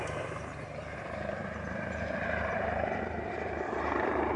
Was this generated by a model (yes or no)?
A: yes